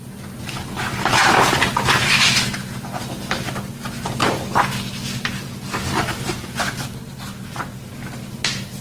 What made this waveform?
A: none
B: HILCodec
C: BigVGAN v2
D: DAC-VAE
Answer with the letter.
A